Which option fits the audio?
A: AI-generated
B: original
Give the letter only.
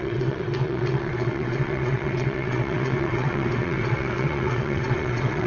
A